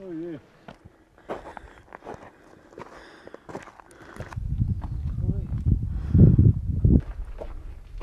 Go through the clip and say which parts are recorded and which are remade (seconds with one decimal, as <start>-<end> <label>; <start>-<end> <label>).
0.0-8.0 recorded